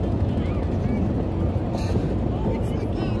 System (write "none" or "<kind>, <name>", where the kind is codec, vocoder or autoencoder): none